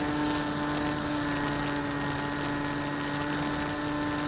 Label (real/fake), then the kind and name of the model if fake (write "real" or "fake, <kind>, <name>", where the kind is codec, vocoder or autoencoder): real